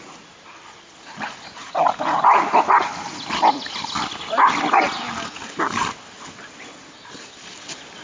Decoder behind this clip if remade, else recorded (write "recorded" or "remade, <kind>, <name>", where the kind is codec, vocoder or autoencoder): recorded